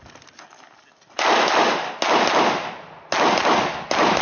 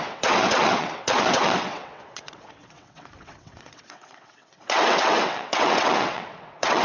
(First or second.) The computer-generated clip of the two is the second